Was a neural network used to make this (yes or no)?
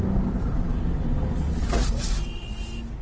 no